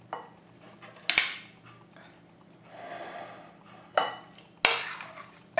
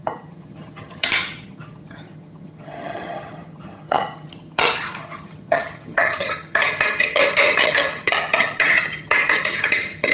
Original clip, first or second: first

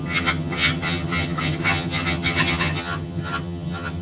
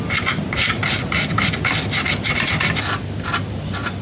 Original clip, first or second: second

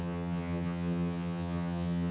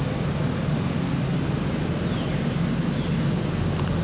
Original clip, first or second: second